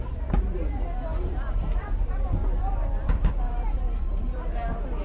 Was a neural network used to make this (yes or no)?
yes